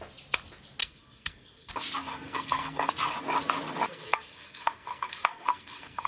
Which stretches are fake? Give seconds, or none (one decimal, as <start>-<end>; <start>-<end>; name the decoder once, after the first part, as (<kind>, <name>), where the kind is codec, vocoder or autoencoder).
0.8-1.7 (codec, SNAC); 2.1-2.9; 3.9-6.1